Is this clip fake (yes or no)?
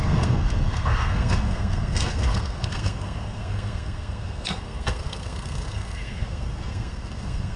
yes